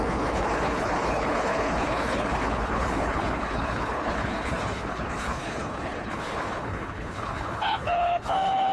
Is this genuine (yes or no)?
no